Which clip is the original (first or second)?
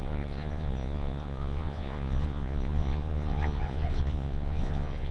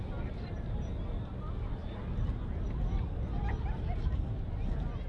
second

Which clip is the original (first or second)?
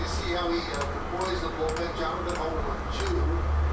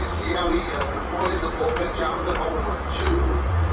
first